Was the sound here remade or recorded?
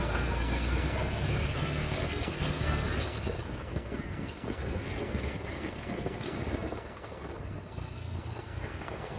remade